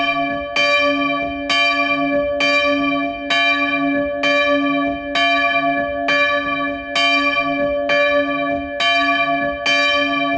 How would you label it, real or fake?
real